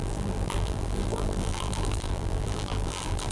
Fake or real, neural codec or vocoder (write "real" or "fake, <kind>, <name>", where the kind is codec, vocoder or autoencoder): fake, vocoder, BigVGAN v2